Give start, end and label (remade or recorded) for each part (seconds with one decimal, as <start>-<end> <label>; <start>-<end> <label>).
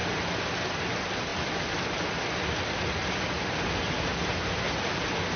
0.0-1.3 recorded; 1.3-2.6 remade; 2.6-5.4 recorded